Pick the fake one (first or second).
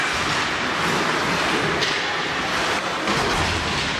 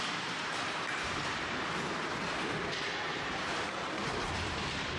second